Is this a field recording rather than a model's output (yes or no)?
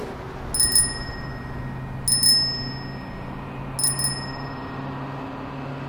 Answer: yes